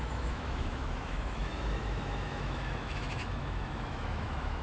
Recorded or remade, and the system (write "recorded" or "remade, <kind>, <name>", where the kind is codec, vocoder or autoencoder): remade, autoencoder, DAC-VAE